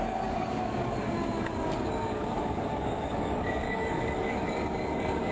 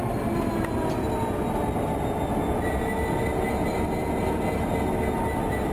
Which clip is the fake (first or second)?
first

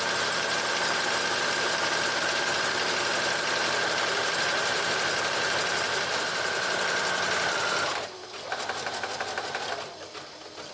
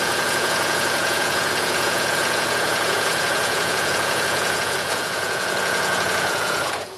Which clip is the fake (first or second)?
second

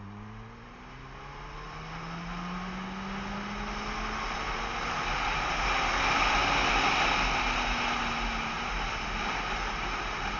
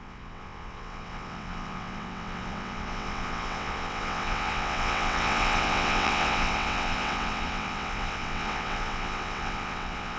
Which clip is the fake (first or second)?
second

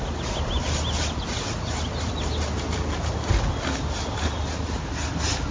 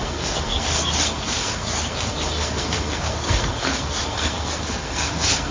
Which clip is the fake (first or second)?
second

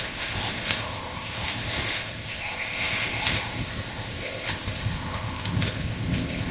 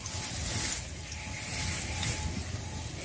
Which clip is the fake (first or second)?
first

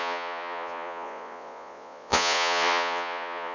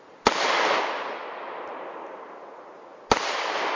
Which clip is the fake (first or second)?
first